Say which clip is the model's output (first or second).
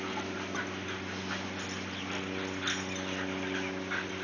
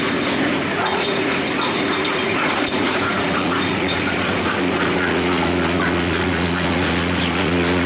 second